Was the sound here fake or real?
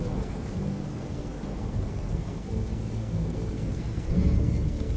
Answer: fake